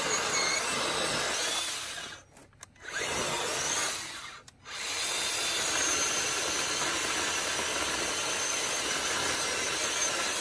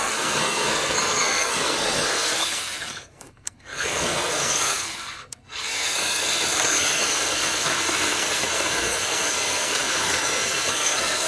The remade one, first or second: second